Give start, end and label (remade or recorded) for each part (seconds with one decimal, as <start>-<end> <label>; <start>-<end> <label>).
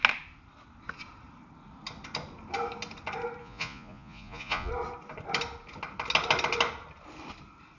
0.0-3.4 recorded; 3.4-4.7 remade; 4.7-7.8 recorded